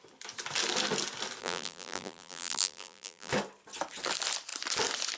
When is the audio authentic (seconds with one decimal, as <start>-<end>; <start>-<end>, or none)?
0.0-1.4; 3.3-5.2